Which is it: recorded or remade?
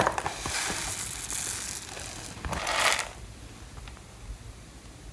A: recorded